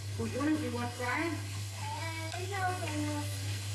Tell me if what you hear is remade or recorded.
remade